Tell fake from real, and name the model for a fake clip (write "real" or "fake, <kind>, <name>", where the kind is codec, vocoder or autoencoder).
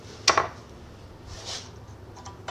real